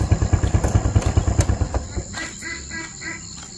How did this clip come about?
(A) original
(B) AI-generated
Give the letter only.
A